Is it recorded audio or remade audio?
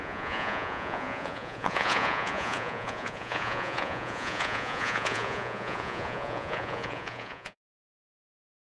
remade